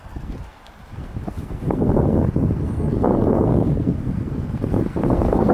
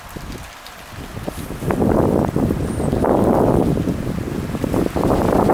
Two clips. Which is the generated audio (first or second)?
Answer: first